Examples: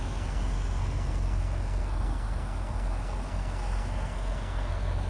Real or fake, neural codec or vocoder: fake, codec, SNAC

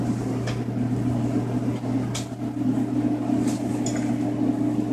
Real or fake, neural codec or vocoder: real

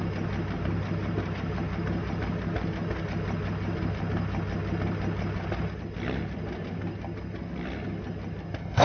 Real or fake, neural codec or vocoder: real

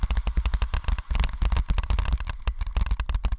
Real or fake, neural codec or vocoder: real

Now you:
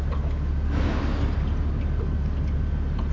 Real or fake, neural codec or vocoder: real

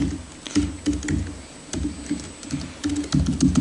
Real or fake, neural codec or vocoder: real